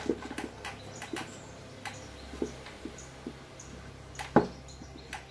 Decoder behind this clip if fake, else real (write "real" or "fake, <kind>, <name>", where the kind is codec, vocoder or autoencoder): real